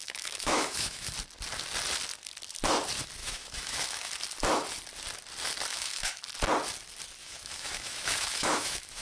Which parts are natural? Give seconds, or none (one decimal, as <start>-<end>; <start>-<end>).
1.1-3.2; 4.1-5.7; 6.2-7.2